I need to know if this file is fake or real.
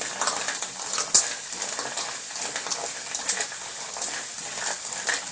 real